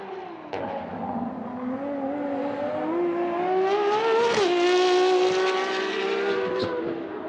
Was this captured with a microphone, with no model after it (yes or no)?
yes